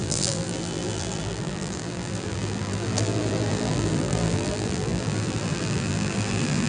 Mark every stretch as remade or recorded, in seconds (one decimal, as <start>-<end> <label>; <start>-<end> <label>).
0.0-6.7 remade